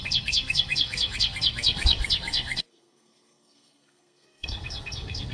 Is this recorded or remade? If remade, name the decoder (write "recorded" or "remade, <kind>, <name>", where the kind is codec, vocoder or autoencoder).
remade, codec, SNAC